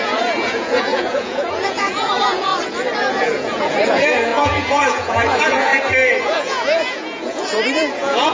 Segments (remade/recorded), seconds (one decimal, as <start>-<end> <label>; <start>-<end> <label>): 0.0-2.5 remade; 2.5-3.1 recorded; 3.1-5.7 remade; 5.7-6.2 recorded; 6.2-8.3 remade